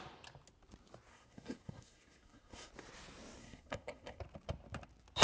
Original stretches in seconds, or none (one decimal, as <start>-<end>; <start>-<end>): 0.0-1.1; 2.7-3.4; 4.2-5.2